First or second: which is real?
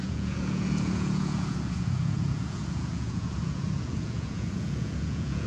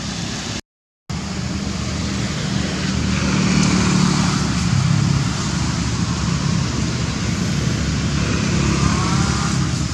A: second